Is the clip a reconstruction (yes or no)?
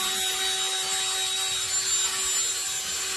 no